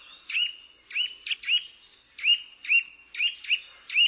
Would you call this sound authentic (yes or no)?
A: yes